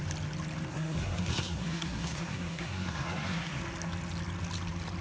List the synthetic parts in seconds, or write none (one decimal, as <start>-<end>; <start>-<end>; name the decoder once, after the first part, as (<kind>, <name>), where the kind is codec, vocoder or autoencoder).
0.7-3.6 (codec, SNAC)